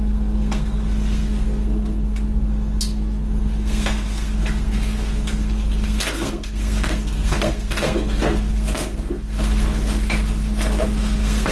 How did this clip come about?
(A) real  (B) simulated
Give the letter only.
B